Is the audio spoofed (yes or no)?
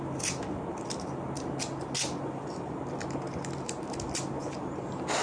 no